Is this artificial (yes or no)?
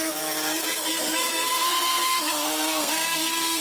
yes